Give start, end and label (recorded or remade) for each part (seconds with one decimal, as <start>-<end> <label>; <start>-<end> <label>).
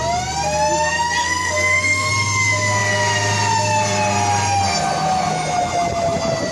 0.0-1.2 recorded; 1.2-2.1 remade; 2.1-6.5 recorded